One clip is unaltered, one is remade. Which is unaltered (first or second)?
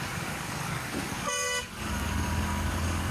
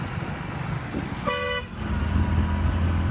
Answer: second